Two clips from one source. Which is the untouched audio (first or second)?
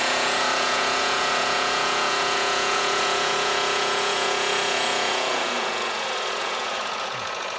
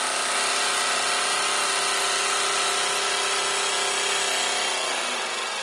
second